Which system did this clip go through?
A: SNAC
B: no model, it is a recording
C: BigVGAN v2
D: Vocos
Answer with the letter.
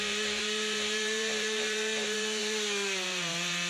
C